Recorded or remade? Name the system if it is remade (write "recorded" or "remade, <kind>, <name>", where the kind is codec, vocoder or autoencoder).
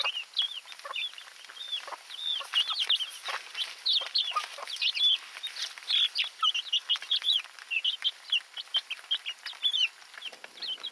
recorded